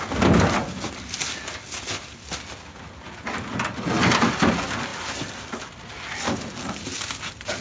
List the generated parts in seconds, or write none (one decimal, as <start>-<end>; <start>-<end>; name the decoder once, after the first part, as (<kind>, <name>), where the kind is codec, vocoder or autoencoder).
none